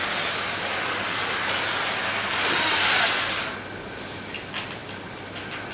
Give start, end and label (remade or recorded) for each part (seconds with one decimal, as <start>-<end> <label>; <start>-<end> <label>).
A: 0.0-5.7 recorded